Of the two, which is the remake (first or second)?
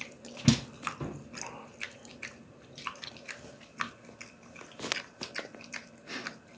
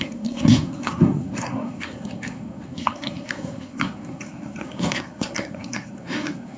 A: second